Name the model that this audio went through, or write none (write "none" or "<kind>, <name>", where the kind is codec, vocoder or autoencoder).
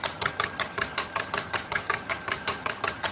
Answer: vocoder, HiFi-GAN